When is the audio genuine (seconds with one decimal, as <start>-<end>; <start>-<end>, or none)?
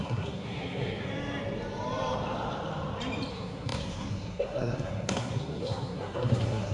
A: 1.1-3.3